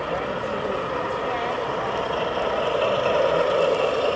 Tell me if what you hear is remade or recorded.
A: recorded